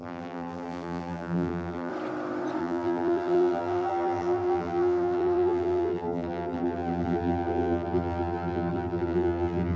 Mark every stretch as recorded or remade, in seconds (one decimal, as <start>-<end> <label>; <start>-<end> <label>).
0.0-1.9 remade; 1.9-2.6 recorded; 2.6-9.8 remade